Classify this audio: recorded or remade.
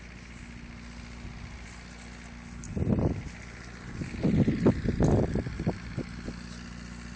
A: recorded